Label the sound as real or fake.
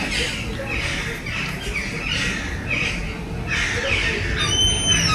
real